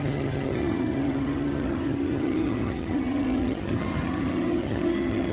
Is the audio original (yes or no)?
no